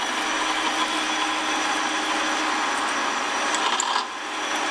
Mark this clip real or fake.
real